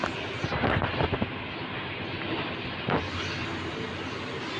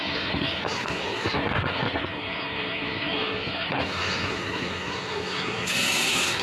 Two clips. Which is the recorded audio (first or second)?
first